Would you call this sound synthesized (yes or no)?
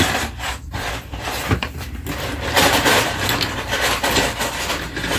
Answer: yes